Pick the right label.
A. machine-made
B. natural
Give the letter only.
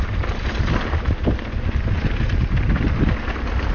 B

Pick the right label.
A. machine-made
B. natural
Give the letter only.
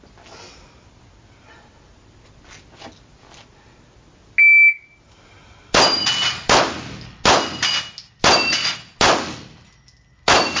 B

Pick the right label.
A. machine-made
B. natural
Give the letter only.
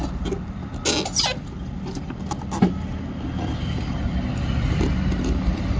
B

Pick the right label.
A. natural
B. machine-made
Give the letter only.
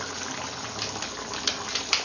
A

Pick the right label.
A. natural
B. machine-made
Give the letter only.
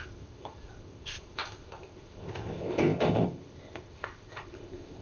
B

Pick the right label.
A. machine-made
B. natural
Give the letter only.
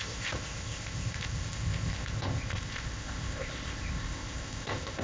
A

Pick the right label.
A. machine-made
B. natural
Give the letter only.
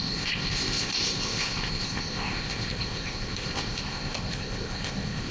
A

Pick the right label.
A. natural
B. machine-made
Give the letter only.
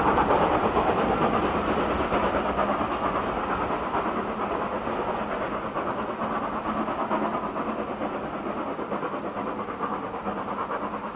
A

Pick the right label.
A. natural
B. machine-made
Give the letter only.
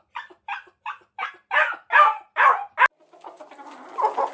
A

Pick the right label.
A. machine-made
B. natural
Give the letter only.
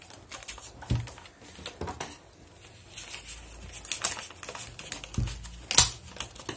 B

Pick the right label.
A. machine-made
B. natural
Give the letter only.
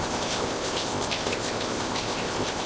A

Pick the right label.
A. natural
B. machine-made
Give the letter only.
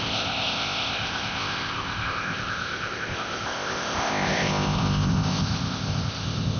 B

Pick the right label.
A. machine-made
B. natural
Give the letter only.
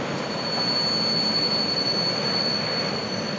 B